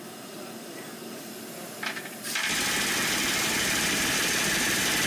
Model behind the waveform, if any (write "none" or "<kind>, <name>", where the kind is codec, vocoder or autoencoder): vocoder, BigVGAN v2